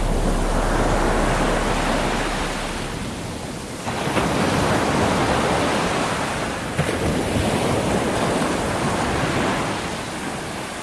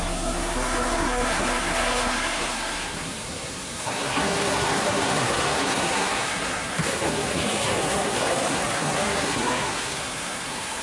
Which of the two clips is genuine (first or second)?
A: first